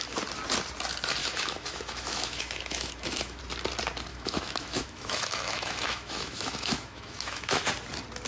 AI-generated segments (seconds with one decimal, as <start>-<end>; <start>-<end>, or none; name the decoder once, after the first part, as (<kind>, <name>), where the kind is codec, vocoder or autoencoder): 1.2-3.4 (autoencoder, DAC-VAE); 4.1-7.7